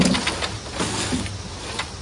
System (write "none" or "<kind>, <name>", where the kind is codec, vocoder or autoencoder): none